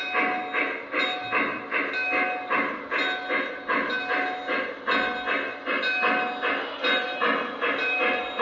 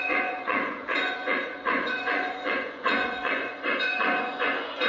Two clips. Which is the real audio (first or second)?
first